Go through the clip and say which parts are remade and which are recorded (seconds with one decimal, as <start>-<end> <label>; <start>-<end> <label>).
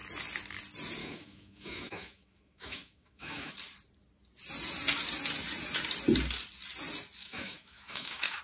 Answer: 0.0-1.0 recorded; 1.0-3.5 remade; 3.5-7.2 recorded; 7.2-8.4 remade